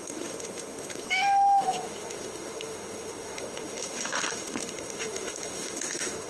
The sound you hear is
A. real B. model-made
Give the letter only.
B